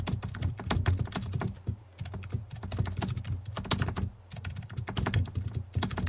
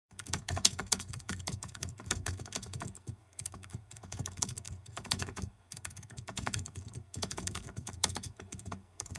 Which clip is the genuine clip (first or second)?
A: first